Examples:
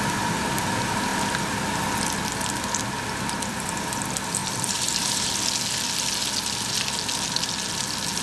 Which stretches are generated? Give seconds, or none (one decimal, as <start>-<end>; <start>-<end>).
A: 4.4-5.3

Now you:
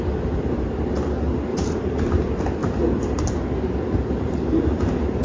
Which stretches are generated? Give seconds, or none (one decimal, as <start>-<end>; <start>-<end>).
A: 1.5-2.1; 2.6-4.8

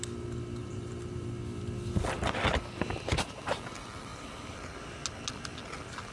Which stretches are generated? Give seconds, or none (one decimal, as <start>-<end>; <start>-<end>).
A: 0.6-1.3

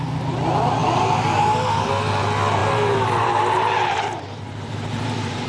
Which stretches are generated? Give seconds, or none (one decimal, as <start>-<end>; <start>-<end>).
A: 0.8-1.9; 2.6-5.5

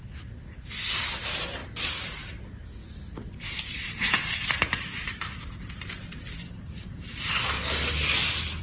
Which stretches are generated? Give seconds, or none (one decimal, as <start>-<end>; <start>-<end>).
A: 1.6-2.3; 2.8-7.5